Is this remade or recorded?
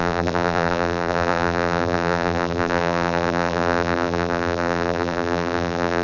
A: remade